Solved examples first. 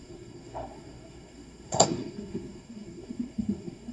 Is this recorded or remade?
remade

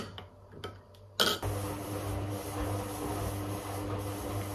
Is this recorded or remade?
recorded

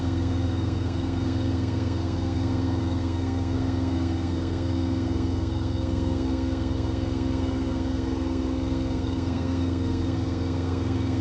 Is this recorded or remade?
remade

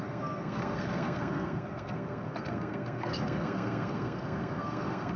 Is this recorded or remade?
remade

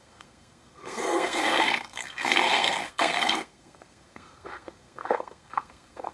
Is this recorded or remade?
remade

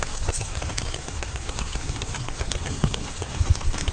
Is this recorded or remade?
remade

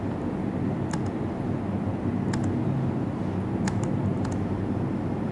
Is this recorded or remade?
recorded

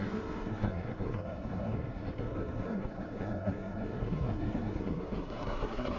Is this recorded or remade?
remade